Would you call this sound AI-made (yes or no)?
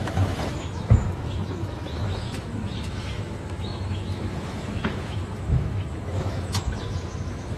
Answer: yes